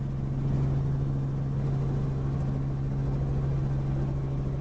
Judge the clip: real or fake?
real